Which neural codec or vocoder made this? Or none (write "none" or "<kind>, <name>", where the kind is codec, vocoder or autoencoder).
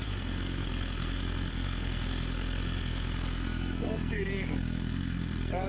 codec, SNAC